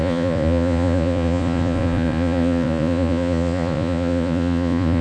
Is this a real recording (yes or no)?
no